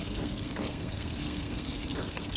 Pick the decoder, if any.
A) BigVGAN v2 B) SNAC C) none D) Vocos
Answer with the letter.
B